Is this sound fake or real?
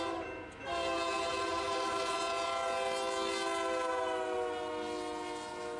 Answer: real